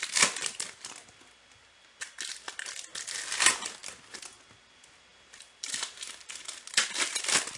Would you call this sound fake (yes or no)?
no